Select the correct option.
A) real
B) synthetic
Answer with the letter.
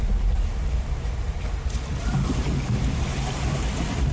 B